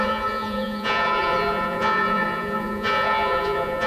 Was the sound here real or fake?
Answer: fake